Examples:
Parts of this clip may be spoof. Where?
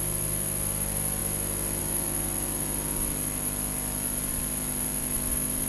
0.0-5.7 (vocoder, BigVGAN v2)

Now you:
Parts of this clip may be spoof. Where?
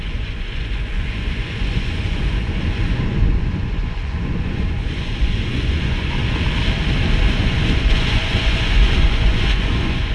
0.0-6.2 (vocoder, Vocos); 7.2-10.1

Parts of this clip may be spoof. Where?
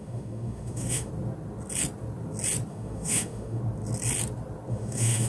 0.0-1.1 (autoencoder, DAC-VAE); 2.7-3.6; 4.7-5.3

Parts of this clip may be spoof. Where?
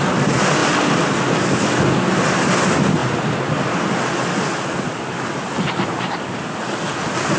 none